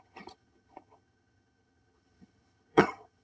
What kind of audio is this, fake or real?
fake